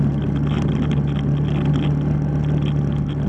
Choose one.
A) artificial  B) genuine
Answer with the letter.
B